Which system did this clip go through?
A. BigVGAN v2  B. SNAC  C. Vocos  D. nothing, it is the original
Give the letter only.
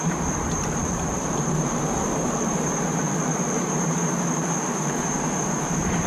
A